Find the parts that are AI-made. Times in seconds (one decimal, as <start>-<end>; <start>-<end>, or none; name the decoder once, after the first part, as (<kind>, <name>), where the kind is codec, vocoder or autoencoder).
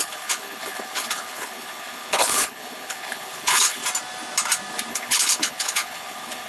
0.0-3.8 (codec, HILCodec); 4.9-6.5